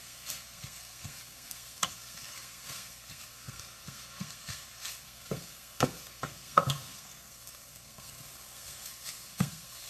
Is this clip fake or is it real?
fake